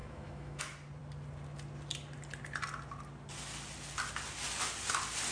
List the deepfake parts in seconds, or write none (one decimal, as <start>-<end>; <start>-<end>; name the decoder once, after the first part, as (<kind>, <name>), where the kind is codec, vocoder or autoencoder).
0.0-0.6 (autoencoder, DAC-VAE)